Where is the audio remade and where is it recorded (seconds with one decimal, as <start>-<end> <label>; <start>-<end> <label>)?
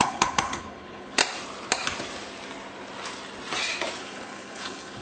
0.0-1.2 remade; 1.2-4.0 recorded; 4.0-5.0 remade